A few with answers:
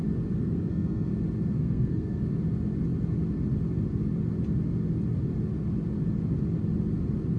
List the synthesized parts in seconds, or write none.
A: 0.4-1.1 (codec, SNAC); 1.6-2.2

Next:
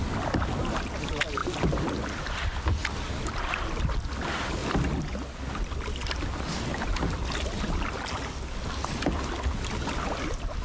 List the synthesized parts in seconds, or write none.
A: none

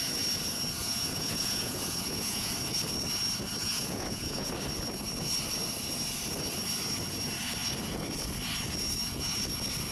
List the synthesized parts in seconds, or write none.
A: 0.8-2.5 (vocoder, Vocos); 3.6-4.5

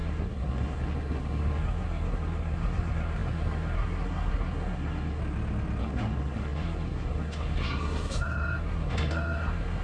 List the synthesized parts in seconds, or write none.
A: 0.0-5.2 (codec, SNAC); 5.8-9.8

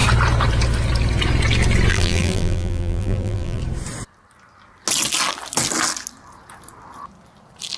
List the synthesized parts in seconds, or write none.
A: 1.9-3.6 (vocoder, BigVGAN v2)

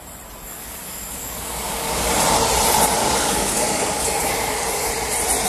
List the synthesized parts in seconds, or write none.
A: 0.5-2.1 (codec, DAC); 3.0-4.9